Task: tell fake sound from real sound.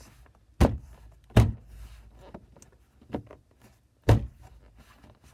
real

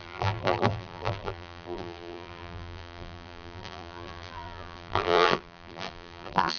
fake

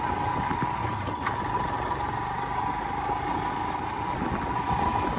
real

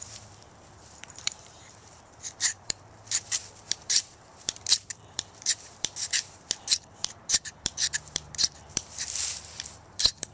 fake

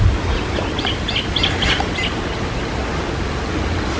real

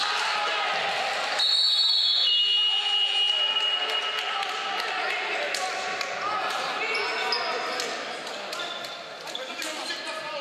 real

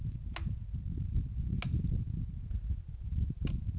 real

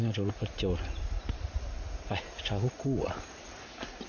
fake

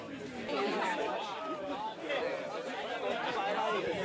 real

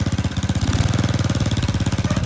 real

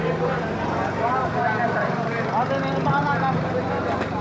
fake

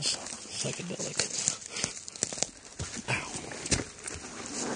real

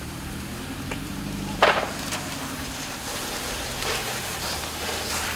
fake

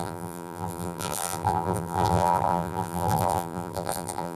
fake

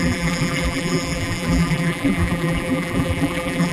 fake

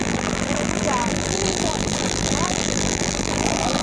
fake